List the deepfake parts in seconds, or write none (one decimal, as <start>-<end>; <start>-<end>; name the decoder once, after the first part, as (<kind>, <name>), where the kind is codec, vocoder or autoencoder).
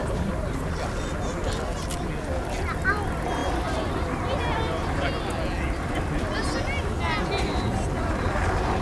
0.0-0.7 (vocoder, BigVGAN v2)